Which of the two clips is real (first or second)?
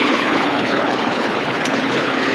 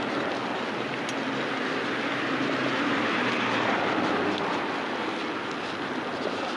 second